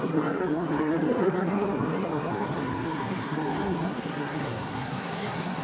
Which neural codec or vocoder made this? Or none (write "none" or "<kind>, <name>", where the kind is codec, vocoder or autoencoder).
codec, SNAC